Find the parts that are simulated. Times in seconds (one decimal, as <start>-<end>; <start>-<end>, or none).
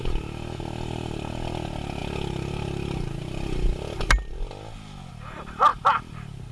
none